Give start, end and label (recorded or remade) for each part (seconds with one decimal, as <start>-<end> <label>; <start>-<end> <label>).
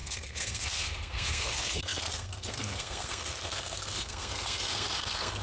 0.0-5.4 remade